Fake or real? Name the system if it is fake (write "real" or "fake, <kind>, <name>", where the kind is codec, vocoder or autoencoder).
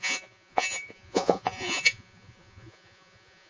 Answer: fake, vocoder, Vocos